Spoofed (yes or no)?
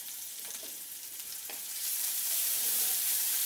yes